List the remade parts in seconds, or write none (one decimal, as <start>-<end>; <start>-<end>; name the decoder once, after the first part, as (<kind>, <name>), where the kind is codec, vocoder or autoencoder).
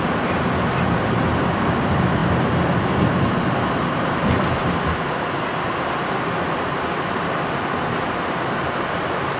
none